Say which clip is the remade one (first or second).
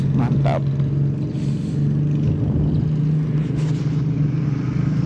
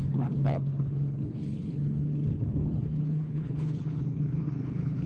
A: second